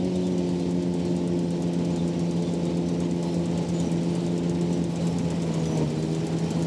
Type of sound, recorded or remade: recorded